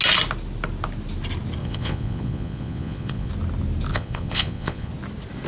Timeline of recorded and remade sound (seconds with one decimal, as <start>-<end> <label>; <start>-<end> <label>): 0.0-1.6 recorded; 1.6-3.3 remade; 3.3-3.9 recorded; 3.9-4.9 remade; 4.9-5.5 recorded